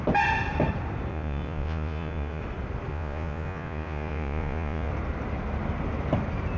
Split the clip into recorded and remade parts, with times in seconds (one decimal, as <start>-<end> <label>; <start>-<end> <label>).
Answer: 0.0-1.1 recorded; 1.1-2.4 remade; 2.4-2.9 recorded; 2.9-4.9 remade; 4.9-6.6 recorded